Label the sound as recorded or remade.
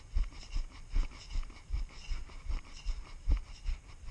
recorded